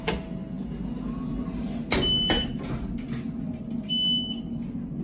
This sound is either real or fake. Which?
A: real